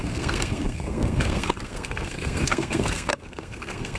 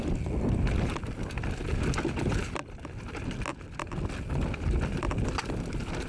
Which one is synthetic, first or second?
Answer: first